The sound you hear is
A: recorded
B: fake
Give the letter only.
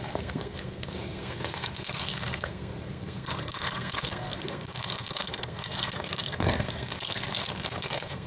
B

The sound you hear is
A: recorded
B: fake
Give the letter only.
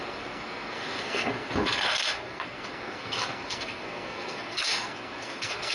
B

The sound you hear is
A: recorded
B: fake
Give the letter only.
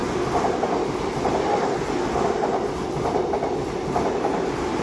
A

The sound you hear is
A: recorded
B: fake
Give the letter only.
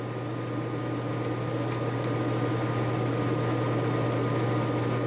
A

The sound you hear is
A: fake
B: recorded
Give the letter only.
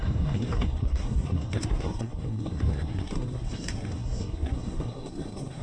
A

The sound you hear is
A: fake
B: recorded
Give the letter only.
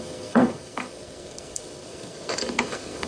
A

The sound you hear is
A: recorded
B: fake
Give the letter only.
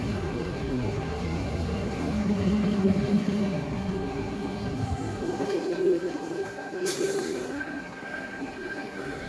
B